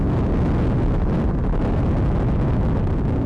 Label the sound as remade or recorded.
recorded